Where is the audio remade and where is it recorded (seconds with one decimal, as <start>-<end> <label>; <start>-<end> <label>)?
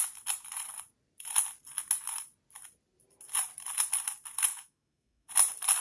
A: 0.0-4.5 recorded; 4.5-5.3 remade; 5.3-5.8 recorded